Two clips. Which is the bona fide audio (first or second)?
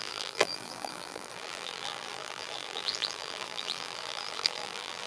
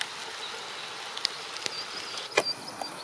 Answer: second